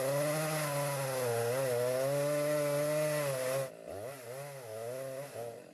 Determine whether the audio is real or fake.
real